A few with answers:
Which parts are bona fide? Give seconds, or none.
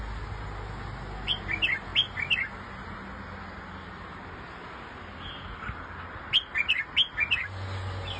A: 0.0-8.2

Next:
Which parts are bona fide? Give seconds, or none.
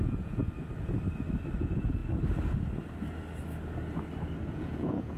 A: 0.4-1.6; 2.0-4.5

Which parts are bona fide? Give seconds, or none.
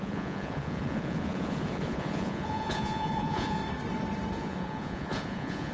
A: 3.6-4.3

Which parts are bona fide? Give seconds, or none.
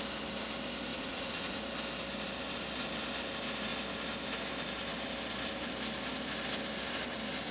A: 0.0-0.9; 1.7-7.5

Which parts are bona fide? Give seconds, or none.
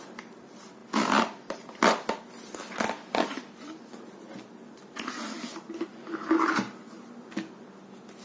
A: 0.0-8.2